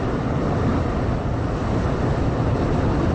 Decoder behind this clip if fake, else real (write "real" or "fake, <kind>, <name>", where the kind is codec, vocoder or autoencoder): real